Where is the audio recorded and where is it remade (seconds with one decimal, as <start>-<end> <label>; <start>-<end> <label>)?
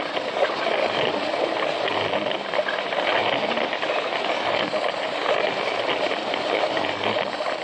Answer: 0.0-7.6 recorded